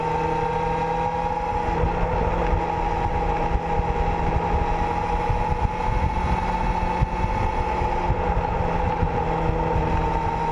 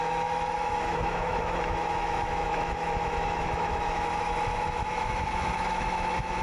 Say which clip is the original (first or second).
first